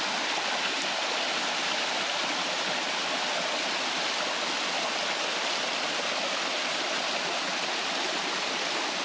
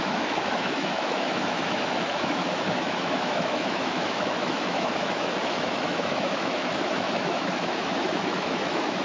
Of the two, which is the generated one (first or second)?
second